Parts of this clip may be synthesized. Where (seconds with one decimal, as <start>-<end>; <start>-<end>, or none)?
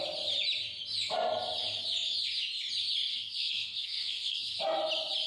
3.1-4.6